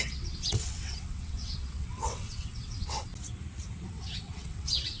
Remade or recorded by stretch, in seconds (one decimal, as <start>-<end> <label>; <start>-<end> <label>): 0.0-3.1 remade; 3.1-3.9 recorded; 3.9-5.0 remade